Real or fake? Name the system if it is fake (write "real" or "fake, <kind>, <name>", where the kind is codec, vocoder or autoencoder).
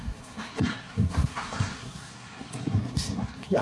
fake, codec, SNAC